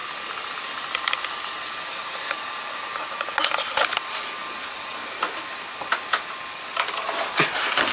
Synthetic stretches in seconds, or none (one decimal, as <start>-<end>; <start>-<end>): 0.0-2.9